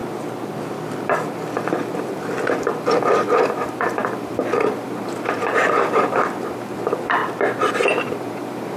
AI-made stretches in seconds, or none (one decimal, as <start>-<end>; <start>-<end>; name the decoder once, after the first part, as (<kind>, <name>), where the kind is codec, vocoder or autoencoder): 1.0-7.2 (vocoder, BigVGAN v2); 7.7-8.8